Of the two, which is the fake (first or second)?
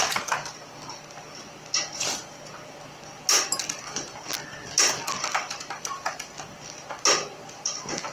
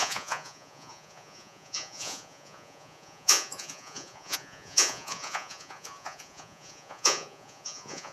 second